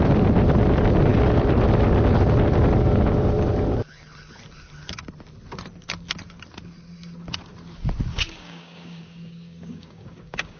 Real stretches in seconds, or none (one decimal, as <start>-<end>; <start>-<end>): 0.0-8.1